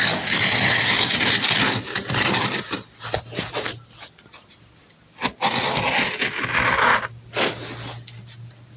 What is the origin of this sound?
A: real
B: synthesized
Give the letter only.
A